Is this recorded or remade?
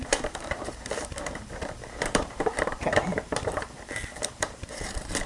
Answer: remade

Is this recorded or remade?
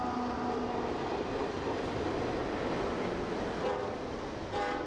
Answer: recorded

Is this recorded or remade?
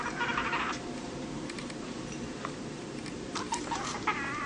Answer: remade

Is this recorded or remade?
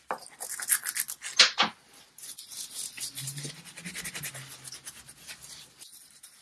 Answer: recorded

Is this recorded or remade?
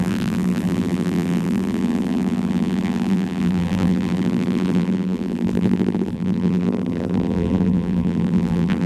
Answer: remade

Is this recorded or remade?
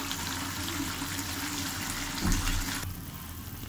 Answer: recorded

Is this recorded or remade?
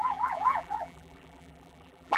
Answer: remade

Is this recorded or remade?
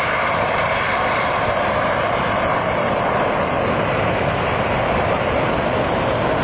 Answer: remade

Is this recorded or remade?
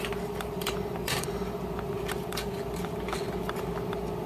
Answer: remade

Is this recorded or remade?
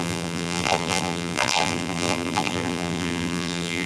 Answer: remade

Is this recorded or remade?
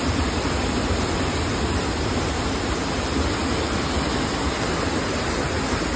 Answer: recorded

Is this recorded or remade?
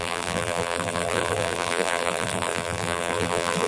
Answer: remade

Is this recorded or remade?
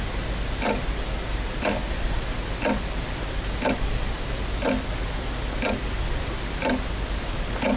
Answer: recorded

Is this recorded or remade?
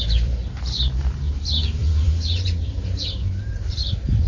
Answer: remade